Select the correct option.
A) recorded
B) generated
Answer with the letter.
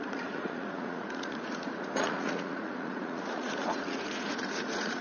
B